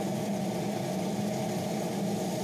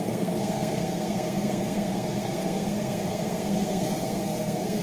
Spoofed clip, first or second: second